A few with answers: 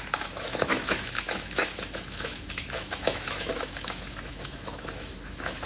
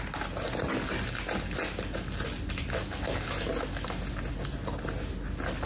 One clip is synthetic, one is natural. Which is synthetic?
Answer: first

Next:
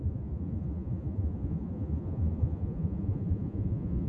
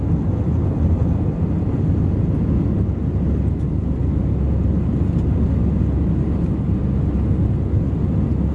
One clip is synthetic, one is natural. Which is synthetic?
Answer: first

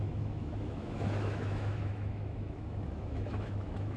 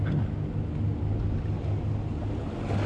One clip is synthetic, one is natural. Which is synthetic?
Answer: first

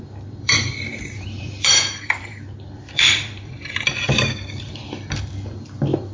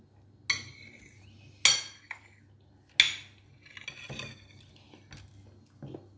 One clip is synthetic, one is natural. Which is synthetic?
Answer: first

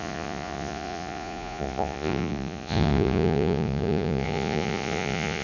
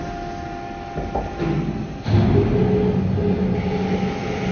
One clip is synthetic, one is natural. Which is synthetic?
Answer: first